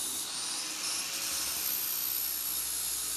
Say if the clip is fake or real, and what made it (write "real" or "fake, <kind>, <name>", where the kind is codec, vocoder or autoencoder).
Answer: real